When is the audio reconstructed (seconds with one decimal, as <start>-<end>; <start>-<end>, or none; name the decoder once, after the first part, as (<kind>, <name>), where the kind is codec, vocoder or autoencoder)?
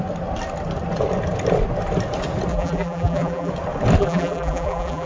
2.5-3.5 (vocoder, BigVGAN v2); 4.0-5.1